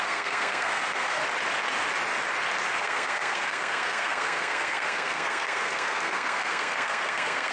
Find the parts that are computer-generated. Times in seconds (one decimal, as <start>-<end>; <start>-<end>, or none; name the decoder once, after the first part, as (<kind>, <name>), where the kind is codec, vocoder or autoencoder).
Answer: 0.0-1.2 (codec, SNAC); 2.8-7.5